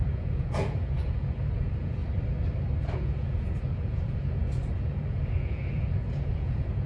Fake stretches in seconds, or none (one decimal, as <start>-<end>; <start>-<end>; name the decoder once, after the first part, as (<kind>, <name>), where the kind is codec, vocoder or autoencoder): 0.0-2.0 (vocoder, Vocos); 2.9-6.9